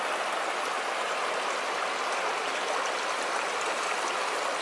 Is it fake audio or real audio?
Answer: real